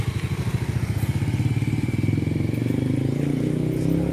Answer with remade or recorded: recorded